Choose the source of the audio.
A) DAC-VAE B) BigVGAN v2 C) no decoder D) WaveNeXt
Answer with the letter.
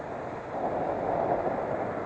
C